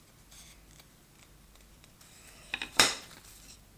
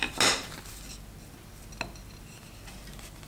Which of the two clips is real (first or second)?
second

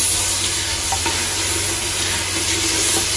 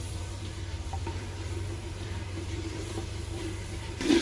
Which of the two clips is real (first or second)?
first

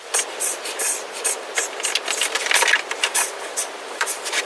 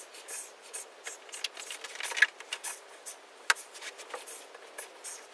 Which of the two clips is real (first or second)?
second